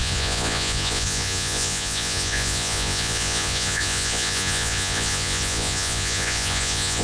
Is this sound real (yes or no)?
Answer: no